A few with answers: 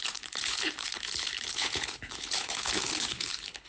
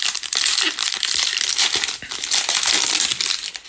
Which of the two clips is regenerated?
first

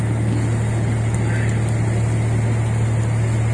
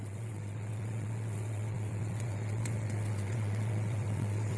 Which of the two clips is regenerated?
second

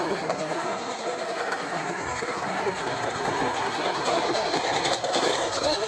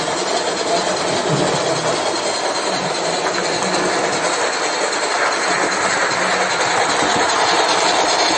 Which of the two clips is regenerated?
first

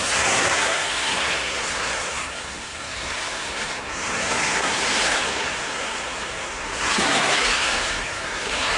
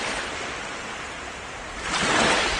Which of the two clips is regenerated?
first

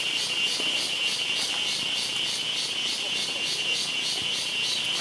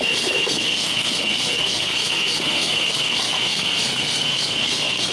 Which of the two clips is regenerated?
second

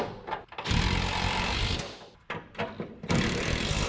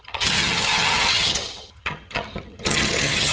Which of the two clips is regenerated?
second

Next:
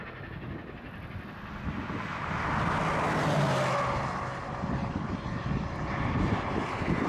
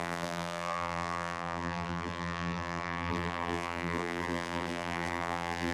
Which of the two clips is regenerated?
second